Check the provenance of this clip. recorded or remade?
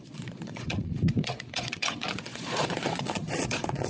remade